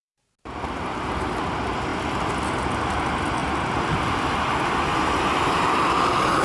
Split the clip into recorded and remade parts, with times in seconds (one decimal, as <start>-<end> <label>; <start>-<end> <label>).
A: 0.0-6.4 recorded